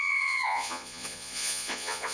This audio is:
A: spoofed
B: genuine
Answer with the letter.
A